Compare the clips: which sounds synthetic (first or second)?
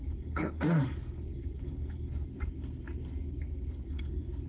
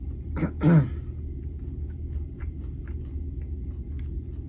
first